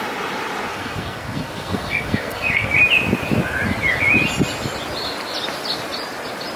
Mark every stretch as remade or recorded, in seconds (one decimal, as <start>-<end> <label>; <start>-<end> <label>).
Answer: 0.0-0.7 recorded; 0.7-2.7 remade; 2.7-6.6 recorded